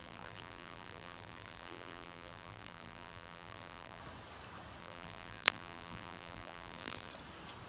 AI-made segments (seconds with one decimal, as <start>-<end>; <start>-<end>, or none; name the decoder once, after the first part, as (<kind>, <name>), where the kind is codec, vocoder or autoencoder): 0.0-4.0 (vocoder, BigVGAN v2); 4.8-7.1